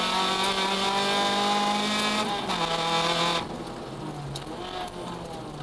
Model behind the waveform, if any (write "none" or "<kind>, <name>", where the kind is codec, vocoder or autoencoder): none